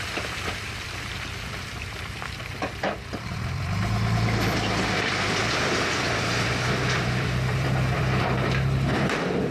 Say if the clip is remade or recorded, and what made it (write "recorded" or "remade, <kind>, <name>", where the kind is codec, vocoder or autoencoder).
remade, vocoder, BigVGAN v2